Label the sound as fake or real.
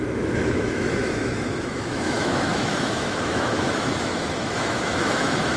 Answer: fake